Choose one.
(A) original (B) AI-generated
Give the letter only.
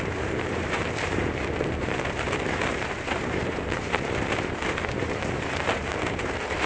B